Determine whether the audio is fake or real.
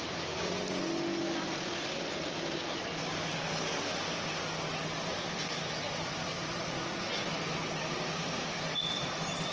real